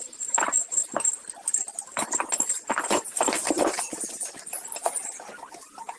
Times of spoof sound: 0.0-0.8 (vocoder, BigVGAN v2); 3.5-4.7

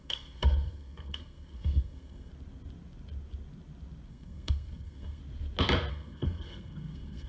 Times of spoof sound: 0.0-2.3 (codec, SNAC); 4.1-5.2; 5.9-7.3

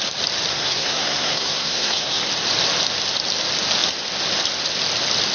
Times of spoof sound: 0.5-2.2 (codec, SNAC)